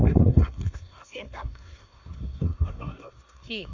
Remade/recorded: remade